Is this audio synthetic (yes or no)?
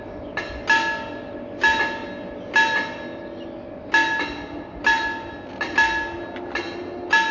no